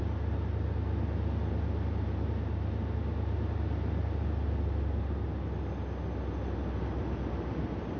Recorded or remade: recorded